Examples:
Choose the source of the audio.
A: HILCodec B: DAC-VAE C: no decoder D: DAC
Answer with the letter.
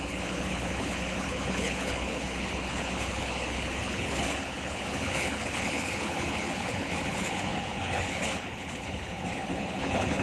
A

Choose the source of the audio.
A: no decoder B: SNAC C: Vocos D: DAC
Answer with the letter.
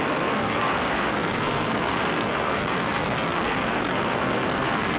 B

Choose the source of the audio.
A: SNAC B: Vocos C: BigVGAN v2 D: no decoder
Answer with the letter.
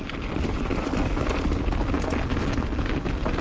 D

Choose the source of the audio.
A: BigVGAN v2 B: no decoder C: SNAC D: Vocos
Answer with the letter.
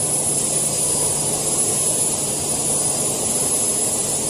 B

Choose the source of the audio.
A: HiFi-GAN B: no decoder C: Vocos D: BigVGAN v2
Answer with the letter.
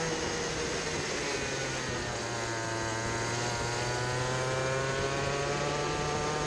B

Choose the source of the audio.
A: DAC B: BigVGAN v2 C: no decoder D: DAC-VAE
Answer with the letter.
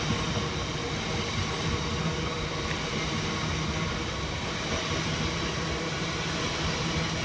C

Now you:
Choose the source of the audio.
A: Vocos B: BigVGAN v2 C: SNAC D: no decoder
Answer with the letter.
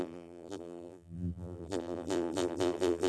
B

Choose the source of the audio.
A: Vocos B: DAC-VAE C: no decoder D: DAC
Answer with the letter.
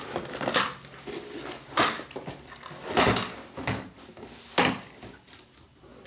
C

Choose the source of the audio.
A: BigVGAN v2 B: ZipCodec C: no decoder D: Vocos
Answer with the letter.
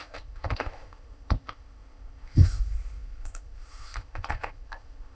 B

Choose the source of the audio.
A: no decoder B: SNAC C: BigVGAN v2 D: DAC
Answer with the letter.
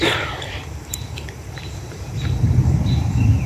C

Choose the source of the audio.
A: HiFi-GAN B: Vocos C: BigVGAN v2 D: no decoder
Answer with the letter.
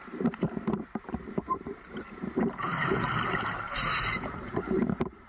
C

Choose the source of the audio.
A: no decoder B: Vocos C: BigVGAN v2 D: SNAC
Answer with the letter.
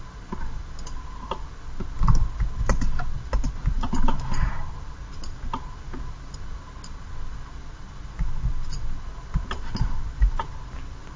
A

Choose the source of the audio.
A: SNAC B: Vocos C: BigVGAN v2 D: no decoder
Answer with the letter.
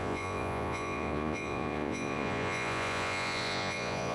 B